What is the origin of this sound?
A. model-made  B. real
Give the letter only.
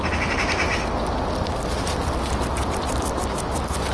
B